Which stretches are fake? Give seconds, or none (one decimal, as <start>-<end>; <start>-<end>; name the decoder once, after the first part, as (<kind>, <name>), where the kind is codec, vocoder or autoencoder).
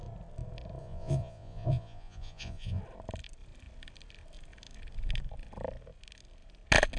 0.8-2.8 (vocoder, Vocos)